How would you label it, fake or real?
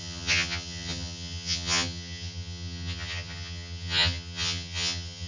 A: fake